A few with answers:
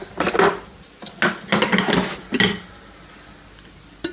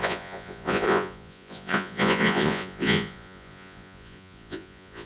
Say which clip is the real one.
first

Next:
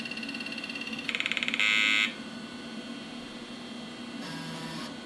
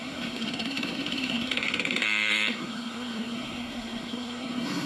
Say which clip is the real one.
first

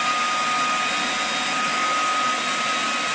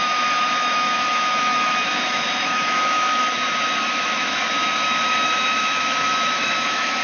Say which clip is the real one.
first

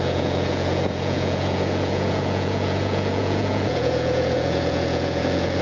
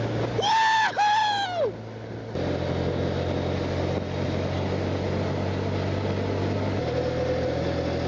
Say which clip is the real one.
second